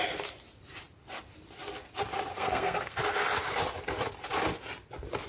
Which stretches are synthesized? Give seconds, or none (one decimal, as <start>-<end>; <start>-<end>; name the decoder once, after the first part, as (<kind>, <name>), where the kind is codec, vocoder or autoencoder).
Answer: 2.3-3.0 (codec, SNAC)